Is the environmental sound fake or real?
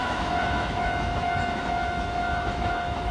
fake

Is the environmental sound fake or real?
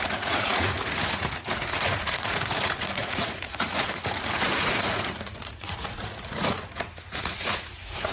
fake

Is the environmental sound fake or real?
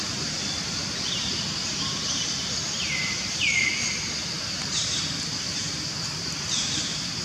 fake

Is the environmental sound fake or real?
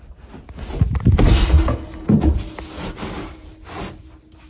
real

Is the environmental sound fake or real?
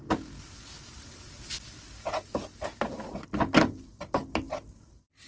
real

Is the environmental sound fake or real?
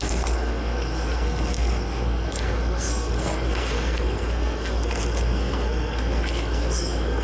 fake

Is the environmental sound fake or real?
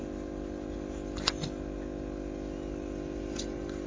real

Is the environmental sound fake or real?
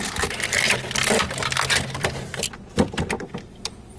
fake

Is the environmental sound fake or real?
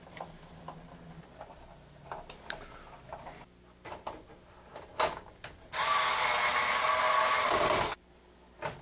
real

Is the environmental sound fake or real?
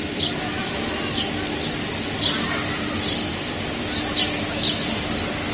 real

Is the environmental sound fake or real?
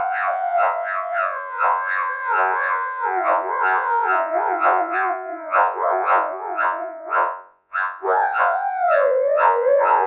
fake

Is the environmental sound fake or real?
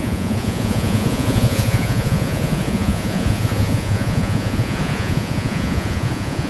fake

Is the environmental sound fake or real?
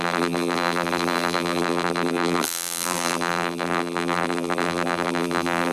fake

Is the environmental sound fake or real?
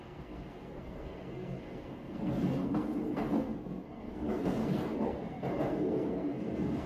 fake